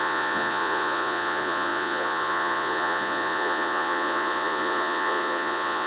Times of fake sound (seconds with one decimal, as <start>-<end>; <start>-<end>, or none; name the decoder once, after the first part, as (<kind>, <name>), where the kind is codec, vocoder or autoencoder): 0.0-5.9 (vocoder, Vocos)